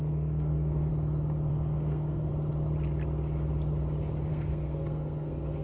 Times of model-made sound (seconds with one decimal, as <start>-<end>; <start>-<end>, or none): 0.0-0.9; 1.5-2.3; 4.3-5.6